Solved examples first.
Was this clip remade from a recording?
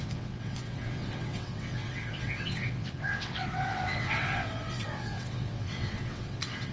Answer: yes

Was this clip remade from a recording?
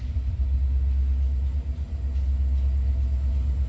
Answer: no